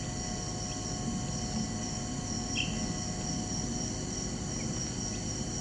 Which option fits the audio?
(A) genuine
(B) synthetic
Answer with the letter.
A